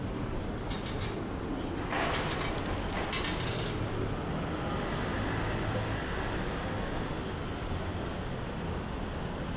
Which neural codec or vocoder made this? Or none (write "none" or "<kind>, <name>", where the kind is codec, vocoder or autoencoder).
none